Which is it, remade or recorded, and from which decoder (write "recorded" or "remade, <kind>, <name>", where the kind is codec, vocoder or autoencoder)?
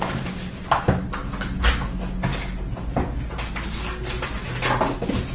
recorded